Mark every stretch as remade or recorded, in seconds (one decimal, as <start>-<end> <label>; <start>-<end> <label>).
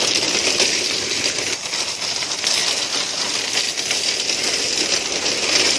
0.0-5.8 recorded